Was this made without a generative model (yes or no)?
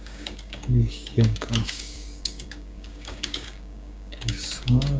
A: no